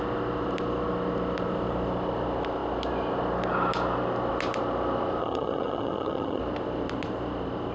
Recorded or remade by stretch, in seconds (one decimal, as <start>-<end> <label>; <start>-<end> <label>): 0.0-5.2 recorded; 5.2-6.4 remade; 6.4-7.7 recorded